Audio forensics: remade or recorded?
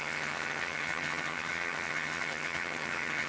remade